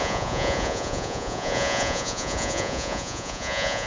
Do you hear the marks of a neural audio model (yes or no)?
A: yes